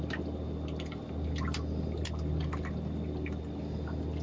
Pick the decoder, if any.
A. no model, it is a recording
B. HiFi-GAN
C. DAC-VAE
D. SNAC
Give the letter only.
A